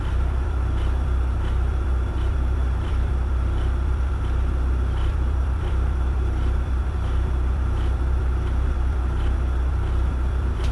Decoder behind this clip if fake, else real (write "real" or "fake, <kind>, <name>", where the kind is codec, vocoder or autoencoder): fake, vocoder, BigVGAN v2